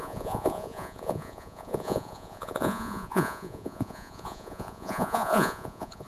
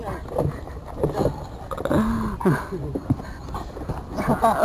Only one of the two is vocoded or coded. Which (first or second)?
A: first